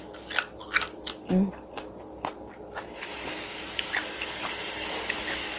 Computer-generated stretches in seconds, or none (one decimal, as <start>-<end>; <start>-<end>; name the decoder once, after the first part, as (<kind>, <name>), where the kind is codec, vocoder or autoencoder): none